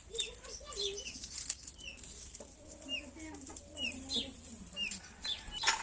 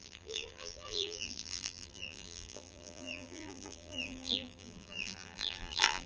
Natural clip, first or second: first